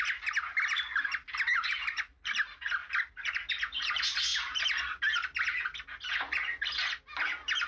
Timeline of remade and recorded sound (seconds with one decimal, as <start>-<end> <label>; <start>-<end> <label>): 0.0-7.7 recorded